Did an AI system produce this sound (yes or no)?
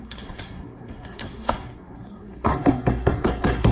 yes